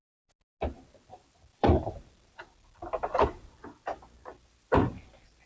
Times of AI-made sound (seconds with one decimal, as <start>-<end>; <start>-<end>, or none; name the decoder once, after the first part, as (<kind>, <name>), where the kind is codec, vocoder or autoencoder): 1.5-3.7 (vocoder, BigVGAN v2); 4.3-5.5